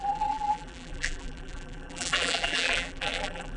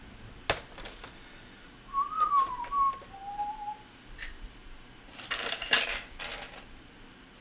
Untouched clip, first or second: second